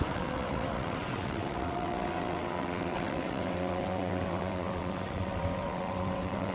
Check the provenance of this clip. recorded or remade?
remade